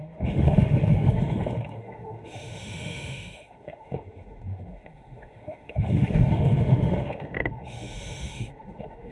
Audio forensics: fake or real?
fake